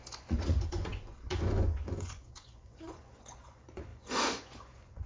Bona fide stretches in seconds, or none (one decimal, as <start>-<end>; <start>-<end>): none